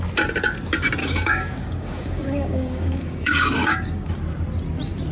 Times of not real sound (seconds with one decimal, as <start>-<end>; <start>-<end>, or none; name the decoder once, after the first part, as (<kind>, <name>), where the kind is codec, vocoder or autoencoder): 1.0-4.1 (codec, DAC)